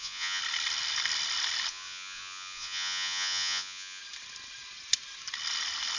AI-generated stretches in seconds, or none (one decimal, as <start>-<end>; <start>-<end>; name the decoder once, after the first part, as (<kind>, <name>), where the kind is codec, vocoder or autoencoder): 0.0-0.4 (vocoder, Vocos); 1.7-4.0